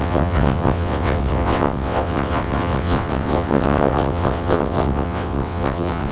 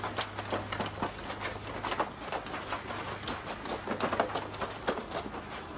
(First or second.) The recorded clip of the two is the second